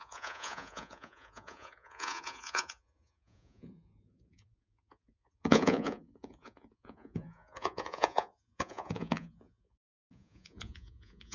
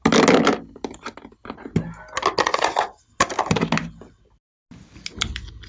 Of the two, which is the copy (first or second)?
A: first